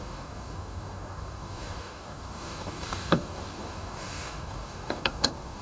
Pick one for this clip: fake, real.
fake